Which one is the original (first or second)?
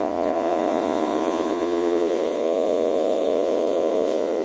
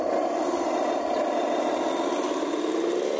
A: second